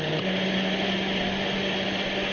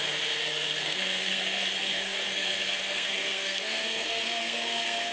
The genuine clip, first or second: first